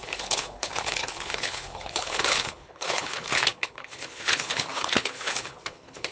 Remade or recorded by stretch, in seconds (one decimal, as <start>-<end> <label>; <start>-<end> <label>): 0.0-6.1 remade